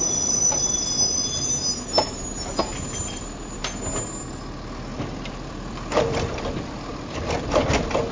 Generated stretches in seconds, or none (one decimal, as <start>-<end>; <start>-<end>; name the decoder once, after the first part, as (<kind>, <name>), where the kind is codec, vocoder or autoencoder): 2.7-3.6 (vocoder, BigVGAN v2); 4.9-6.4; 6.9-8.1